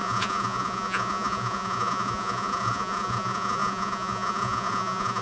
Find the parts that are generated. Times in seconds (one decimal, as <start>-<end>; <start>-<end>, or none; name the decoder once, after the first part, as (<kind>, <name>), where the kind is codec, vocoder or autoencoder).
0.0-5.2 (vocoder, Vocos)